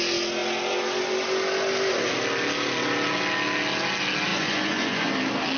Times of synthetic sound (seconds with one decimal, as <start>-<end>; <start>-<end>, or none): 4.3-5.1